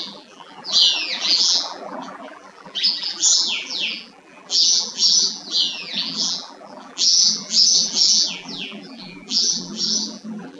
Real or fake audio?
fake